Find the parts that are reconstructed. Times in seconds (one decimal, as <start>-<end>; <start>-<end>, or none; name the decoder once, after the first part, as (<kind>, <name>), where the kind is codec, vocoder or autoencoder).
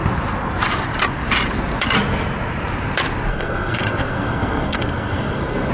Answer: 3.3-5.7 (codec, SNAC)